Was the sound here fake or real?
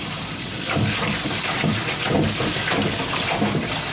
real